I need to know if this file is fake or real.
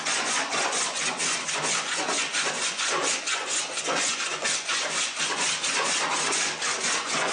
fake